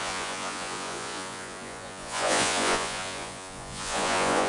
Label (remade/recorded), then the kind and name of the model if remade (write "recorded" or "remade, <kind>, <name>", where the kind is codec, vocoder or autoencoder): remade, vocoder, Vocos